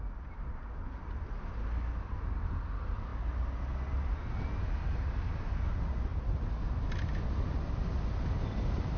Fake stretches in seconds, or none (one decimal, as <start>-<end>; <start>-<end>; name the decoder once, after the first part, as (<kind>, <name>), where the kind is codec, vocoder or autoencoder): none